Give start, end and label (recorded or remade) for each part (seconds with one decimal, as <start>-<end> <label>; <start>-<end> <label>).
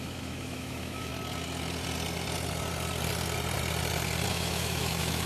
0.0-1.1 remade; 1.1-4.3 recorded; 4.3-5.3 remade